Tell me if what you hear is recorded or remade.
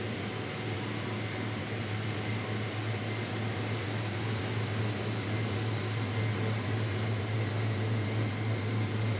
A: recorded